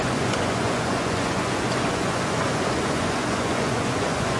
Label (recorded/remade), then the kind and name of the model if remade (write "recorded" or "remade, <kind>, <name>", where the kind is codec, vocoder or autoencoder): remade, vocoder, Vocos